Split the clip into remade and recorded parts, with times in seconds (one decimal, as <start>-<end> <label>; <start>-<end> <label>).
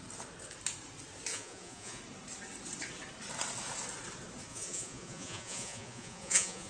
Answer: 0.0-1.3 recorded; 1.3-2.0 remade; 2.0-4.5 recorded; 4.5-6.7 remade